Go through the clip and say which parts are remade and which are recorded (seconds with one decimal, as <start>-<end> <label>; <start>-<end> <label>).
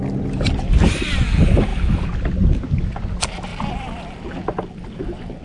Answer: 0.0-1.7 recorded; 1.7-2.5 remade; 2.5-3.5 recorded; 3.5-4.8 remade; 4.8-5.4 recorded